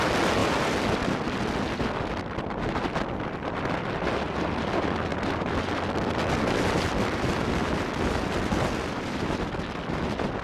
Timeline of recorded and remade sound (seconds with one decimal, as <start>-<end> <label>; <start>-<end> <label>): 0.0-10.4 recorded